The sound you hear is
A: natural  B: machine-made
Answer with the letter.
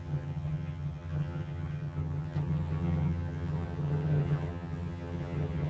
B